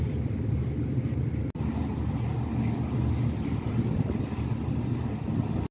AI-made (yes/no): no